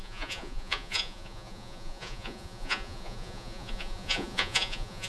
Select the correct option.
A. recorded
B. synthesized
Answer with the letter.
B